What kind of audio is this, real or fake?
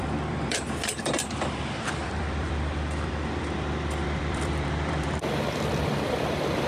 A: fake